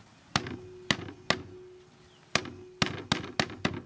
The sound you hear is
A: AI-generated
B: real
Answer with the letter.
B